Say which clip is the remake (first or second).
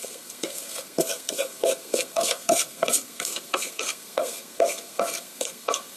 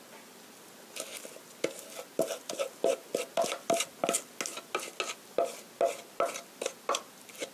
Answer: first